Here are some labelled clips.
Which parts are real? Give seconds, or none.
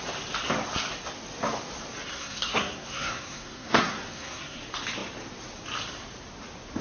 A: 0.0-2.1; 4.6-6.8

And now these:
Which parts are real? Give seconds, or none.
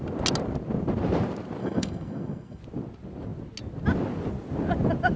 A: 0.0-1.6; 2.6-5.2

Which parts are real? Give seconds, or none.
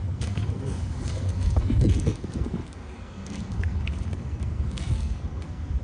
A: none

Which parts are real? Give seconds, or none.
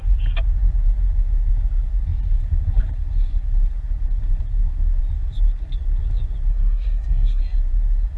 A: 0.0-6.5; 7.4-8.2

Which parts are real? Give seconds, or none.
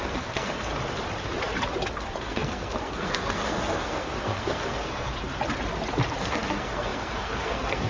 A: 0.7-2.0; 5.1-6.2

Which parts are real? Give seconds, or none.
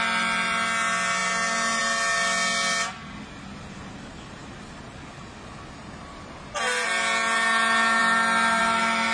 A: 0.0-9.1